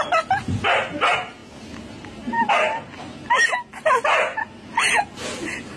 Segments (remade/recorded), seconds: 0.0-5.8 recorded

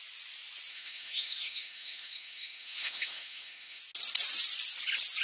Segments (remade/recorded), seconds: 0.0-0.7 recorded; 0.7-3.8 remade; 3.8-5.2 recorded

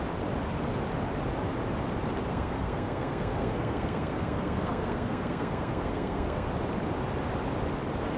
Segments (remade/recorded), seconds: 0.0-2.3 recorded; 2.3-6.5 remade; 6.5-8.2 recorded

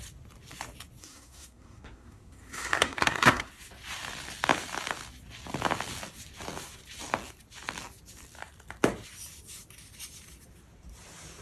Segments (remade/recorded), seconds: 0.0-1.0 recorded; 1.0-3.5 remade; 3.5-11.4 recorded